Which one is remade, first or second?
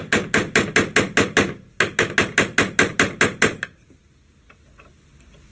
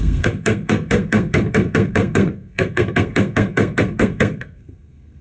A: second